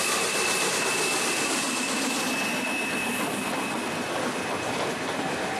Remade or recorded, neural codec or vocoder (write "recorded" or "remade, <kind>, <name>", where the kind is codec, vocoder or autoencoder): remade, vocoder, BigVGAN v2